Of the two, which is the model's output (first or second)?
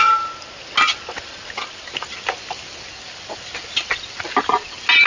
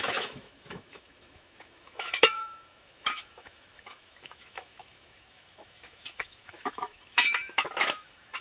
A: second